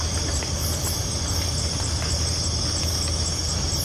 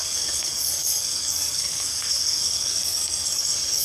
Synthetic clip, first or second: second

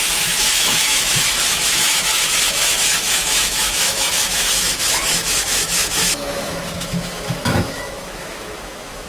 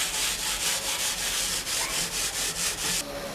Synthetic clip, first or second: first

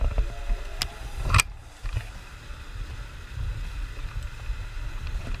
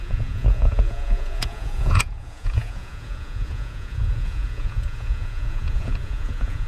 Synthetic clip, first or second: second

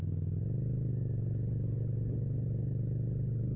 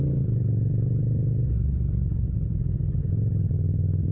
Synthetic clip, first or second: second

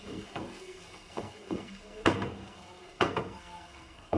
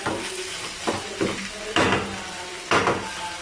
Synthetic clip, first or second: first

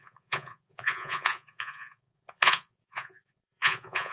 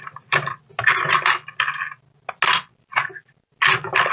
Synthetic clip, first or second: first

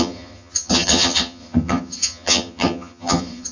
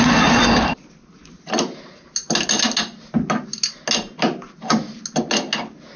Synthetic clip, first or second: first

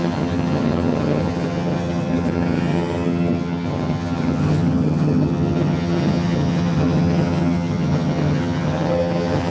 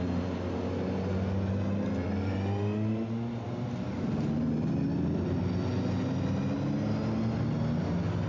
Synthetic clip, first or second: first